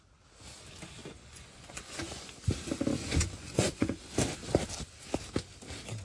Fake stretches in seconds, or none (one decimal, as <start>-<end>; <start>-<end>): 1.0-2.5; 3.0-4.0